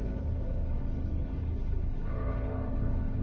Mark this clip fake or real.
fake